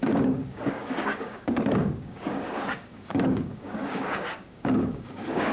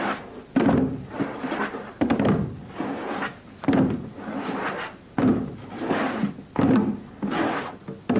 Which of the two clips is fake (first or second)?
first